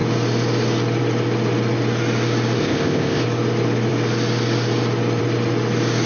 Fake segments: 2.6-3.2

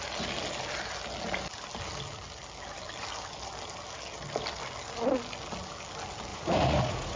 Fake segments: 6.3-7.2